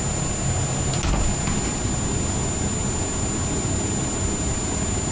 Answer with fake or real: real